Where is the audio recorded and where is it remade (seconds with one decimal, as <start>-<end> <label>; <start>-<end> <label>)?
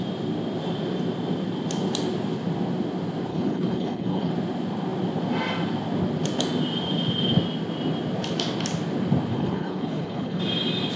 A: 0.0-3.3 recorded; 3.3-4.3 remade; 4.3-9.3 recorded; 9.3-10.4 remade; 10.4-11.0 recorded